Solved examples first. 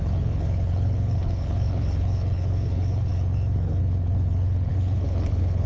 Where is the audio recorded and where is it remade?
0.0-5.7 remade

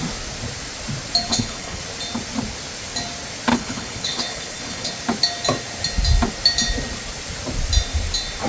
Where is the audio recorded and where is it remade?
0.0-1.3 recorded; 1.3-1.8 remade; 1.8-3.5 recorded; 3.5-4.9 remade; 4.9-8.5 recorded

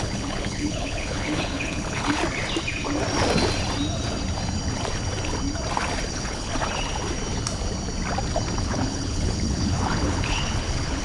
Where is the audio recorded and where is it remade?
0.0-2.2 remade; 2.2-6.1 recorded; 6.1-6.5 remade; 6.5-8.6 recorded; 8.6-11.0 remade